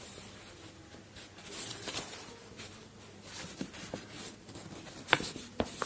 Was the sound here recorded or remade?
recorded